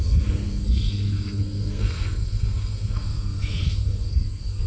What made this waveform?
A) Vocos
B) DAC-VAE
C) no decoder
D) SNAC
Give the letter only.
D